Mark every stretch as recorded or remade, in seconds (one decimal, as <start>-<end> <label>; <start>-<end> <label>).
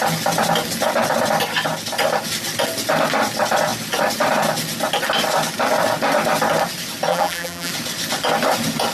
0.0-7.1 recorded; 7.1-7.7 remade; 7.7-8.9 recorded